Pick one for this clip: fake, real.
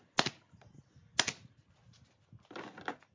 real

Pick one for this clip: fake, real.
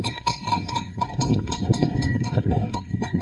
fake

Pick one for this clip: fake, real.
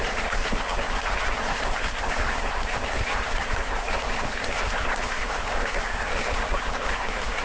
fake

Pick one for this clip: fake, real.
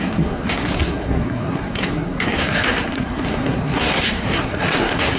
fake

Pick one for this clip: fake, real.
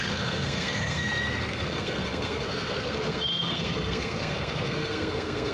fake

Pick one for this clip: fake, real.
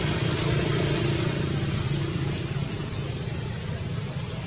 real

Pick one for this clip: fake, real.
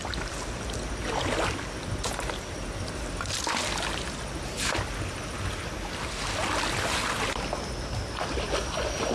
real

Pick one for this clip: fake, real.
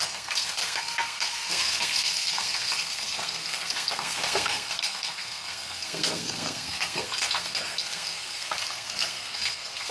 fake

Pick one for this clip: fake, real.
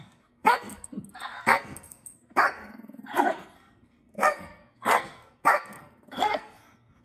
fake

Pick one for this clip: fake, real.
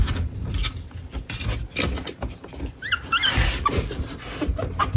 real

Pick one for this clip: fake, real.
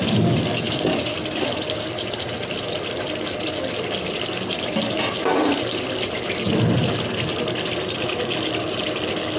real